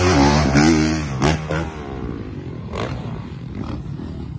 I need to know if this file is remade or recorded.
recorded